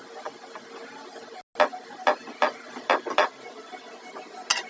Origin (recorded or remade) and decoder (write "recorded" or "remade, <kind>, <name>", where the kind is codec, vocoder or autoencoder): recorded